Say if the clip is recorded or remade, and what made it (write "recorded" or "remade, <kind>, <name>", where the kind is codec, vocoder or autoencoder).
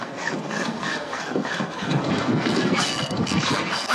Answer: remade, codec, SNAC